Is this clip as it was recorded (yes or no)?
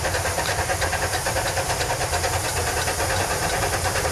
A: yes